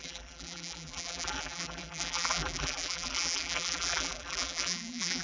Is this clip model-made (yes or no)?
yes